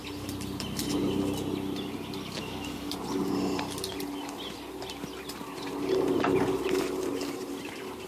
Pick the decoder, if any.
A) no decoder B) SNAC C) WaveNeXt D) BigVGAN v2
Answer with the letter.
D